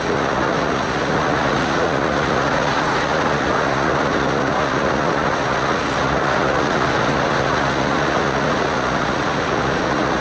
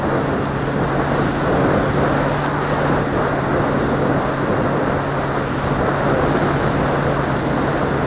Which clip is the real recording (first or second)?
second